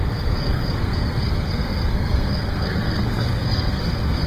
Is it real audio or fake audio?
fake